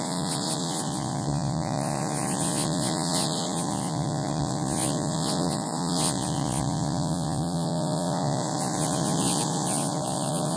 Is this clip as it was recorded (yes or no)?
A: no